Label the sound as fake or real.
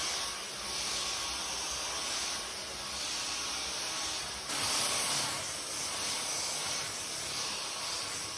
real